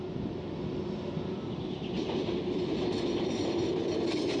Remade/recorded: recorded